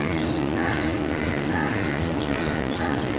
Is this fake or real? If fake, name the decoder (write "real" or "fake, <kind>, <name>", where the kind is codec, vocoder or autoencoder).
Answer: fake, vocoder, Vocos